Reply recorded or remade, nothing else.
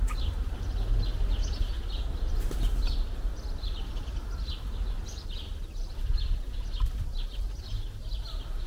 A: recorded